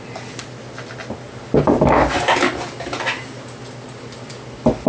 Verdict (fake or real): real